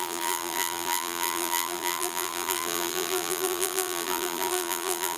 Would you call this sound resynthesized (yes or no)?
yes